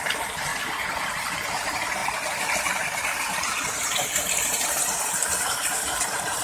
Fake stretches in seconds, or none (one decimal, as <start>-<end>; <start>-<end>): none